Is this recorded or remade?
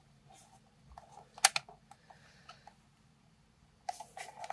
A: recorded